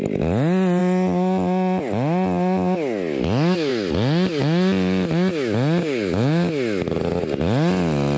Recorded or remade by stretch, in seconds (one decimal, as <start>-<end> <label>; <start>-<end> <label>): 0.0-5.8 recorded; 5.8-6.5 remade; 6.5-8.2 recorded

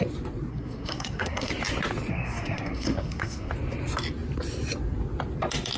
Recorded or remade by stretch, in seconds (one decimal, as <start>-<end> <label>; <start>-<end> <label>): 0.0-0.5 recorded; 0.5-1.5 remade; 1.5-2.1 recorded; 2.1-3.5 remade; 3.5-5.8 recorded